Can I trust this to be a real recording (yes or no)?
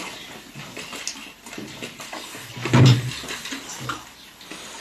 yes